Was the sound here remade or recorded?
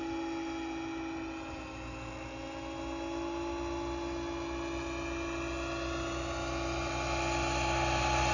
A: recorded